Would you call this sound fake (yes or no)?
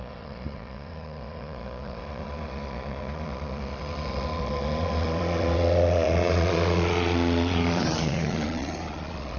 yes